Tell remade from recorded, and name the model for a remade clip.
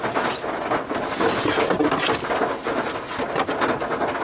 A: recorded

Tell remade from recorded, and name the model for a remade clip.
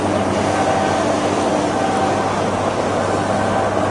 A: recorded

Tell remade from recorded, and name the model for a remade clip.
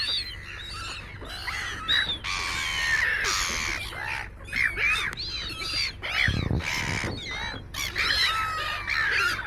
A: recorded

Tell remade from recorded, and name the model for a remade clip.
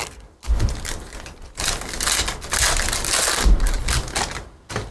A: recorded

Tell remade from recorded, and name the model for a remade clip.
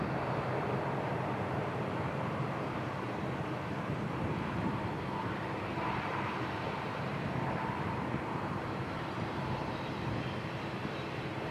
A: remade, vocoder, BigVGAN v2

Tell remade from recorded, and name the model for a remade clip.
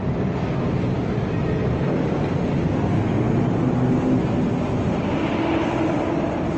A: recorded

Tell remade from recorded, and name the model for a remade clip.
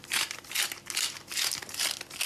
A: recorded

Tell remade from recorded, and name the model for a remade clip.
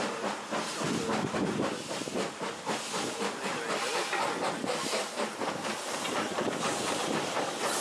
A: recorded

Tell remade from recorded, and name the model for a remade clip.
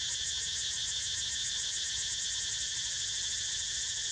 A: recorded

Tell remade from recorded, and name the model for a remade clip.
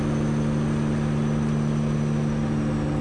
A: recorded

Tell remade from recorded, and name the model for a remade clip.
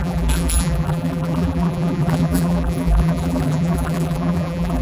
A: remade, vocoder, BigVGAN v2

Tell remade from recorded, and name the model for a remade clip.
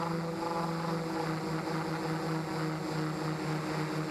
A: recorded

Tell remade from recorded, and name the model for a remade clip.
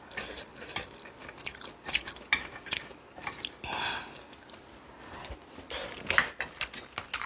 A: recorded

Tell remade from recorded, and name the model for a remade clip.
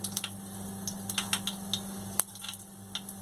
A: recorded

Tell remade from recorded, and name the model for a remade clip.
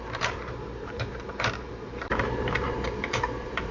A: remade, vocoder, BigVGAN v2